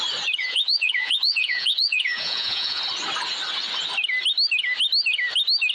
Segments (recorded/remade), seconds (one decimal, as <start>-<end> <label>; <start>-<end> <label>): 0.0-0.4 recorded; 0.4-2.8 remade; 2.8-5.7 recorded